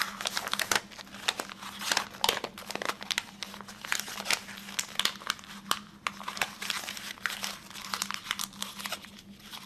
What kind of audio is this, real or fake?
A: real